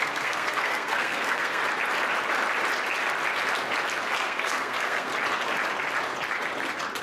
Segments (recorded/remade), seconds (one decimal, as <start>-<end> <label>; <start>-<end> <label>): 0.0-1.6 remade; 1.6-4.1 recorded; 4.1-5.1 remade; 5.1-7.0 recorded